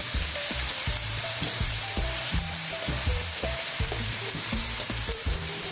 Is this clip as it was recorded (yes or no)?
no